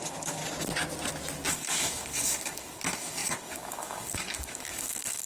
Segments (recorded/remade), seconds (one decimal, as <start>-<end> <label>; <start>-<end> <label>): 0.0-0.4 remade; 0.4-1.5 recorded; 1.5-5.3 remade